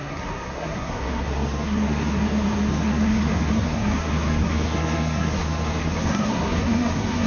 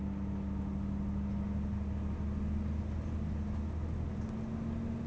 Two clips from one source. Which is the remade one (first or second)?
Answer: first